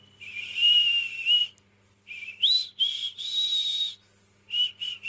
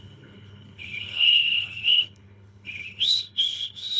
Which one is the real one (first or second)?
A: first